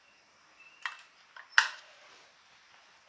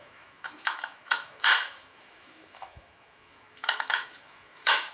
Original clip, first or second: first